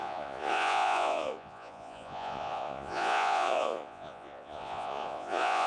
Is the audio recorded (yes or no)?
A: no